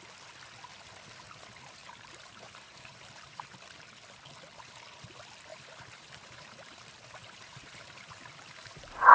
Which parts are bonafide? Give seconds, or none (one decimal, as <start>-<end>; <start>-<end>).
0.0-1.8; 3.5-5.5; 6.8-7.2